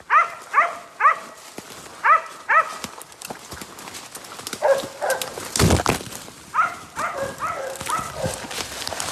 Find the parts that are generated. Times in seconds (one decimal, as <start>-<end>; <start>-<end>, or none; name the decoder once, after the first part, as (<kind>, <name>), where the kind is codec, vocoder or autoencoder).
none

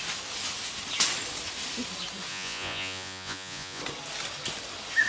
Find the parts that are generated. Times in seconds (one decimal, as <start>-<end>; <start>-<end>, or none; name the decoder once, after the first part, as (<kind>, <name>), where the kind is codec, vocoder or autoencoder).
2.3-3.8 (vocoder, Vocos)

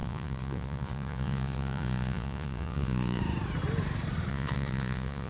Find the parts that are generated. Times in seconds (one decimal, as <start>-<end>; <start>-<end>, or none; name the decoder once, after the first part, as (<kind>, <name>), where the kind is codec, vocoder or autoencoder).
0.0-3.2 (vocoder, Vocos); 4.3-5.3

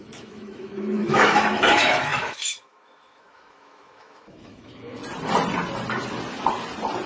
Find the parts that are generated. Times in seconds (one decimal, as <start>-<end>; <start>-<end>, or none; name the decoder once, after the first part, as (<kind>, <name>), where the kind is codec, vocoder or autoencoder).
0.0-5.0 (autoencoder, DAC-VAE)